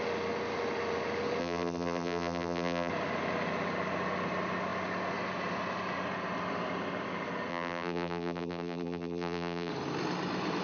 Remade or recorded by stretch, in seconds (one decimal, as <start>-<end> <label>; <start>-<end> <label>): 0.0-1.4 recorded; 1.4-2.9 remade; 2.9-7.5 recorded; 7.5-9.7 remade; 9.7-10.6 recorded